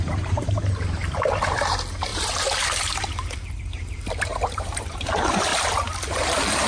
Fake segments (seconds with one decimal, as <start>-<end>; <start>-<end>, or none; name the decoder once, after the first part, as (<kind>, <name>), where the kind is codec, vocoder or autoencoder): 0.0-1.0 (vocoder, BigVGAN v2); 1.5-2.1; 3.6-5.5; 6.1-6.7